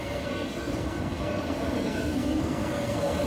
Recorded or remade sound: remade